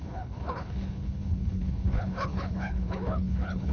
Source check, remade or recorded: remade